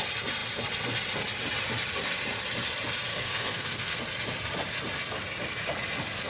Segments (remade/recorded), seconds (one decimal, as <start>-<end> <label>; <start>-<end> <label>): 0.0-3.1 recorded; 3.1-4.0 remade; 4.0-6.3 recorded